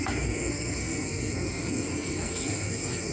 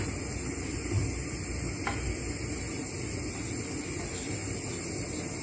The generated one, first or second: first